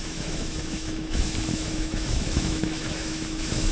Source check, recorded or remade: remade